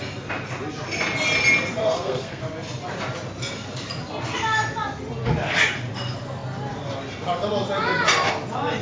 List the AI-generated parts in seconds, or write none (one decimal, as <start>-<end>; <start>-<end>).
1.8-2.4